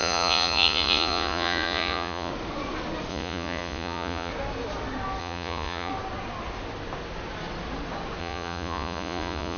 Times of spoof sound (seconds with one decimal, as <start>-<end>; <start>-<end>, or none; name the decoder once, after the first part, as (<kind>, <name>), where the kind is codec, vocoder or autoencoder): 0.0-2.3 (vocoder, Vocos); 3.1-4.3; 5.2-5.9; 8.2-9.6